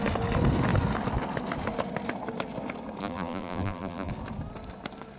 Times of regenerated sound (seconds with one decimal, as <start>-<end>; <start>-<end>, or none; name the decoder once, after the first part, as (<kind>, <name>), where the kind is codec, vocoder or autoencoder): 3.0-4.1 (vocoder, BigVGAN v2)